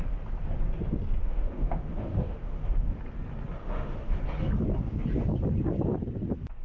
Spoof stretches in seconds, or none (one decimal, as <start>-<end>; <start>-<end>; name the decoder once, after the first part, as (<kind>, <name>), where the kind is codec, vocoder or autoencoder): 1.2-3.0 (autoencoder, DAC-VAE); 3.6-4.2